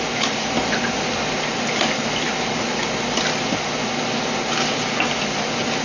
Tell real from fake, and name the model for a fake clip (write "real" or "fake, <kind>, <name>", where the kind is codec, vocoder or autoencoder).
real